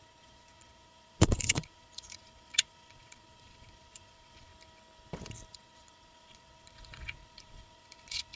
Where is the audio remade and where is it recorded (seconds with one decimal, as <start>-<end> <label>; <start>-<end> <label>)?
0.0-4.5 remade; 4.5-5.5 recorded; 5.5-8.4 remade